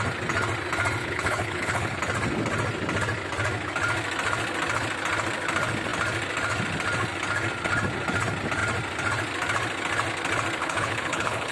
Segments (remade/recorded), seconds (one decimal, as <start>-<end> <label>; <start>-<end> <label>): 0.0-1.0 recorded; 1.0-2.0 remade; 2.0-10.6 recorded; 10.6-11.5 remade